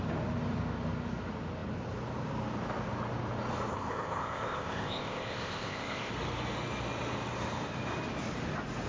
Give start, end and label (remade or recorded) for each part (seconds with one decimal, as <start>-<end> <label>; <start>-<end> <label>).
0.0-3.7 recorded; 3.7-6.1 remade; 6.1-8.9 recorded